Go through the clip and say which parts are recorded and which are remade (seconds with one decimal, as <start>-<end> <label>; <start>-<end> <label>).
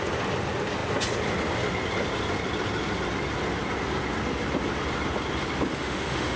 0.0-5.7 recorded; 5.7-6.4 remade